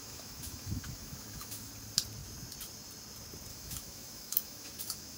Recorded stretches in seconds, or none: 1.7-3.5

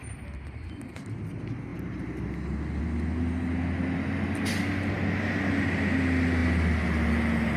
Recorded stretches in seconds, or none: 0.0-7.6